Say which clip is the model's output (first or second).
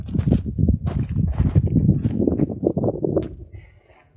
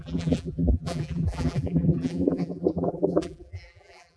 second